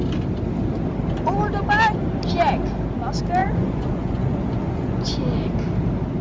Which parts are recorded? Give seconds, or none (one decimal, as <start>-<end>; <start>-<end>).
0.0-3.4; 5.2-6.2